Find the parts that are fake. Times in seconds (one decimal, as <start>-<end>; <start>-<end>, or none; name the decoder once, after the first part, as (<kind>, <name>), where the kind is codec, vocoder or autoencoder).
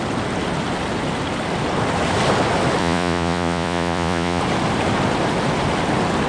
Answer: 2.8-4.4 (vocoder, Vocos)